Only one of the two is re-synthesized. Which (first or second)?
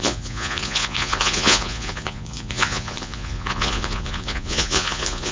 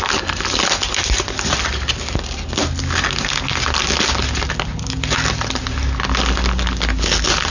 first